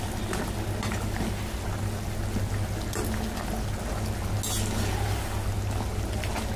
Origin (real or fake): real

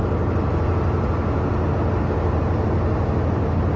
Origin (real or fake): real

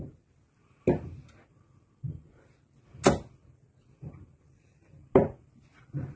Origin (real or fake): real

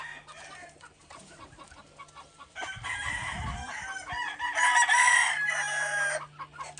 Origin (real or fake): real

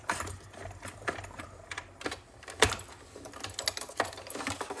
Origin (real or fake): real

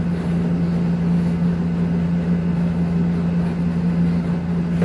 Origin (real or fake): real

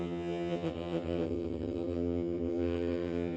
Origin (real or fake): fake